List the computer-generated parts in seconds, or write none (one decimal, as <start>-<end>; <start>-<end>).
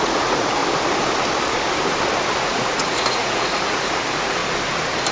0.0-0.6; 2.4-4.4